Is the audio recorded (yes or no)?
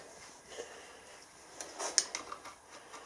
yes